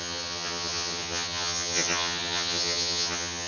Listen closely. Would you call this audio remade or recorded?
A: remade